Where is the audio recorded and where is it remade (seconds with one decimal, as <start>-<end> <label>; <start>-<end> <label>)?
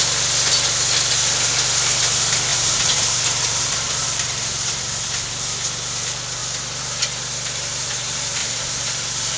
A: 0.0-2.5 recorded; 2.5-4.8 remade; 4.8-6.4 recorded; 6.4-7.9 remade; 7.9-8.4 recorded; 8.4-9.4 remade